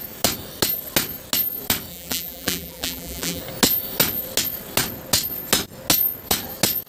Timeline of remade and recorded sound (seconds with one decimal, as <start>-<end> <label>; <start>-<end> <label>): 0.0-1.9 recorded; 1.9-3.4 remade; 3.4-6.9 recorded